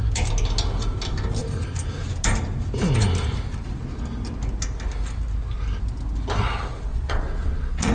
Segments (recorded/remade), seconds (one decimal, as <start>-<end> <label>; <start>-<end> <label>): 0.0-6.9 recorded; 6.9-7.9 remade